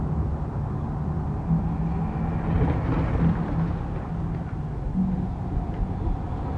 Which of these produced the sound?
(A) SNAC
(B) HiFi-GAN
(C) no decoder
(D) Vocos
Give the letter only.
C